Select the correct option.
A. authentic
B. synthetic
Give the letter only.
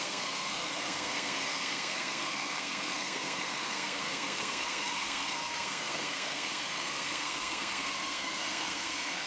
B